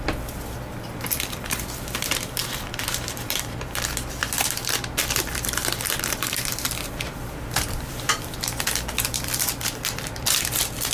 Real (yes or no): no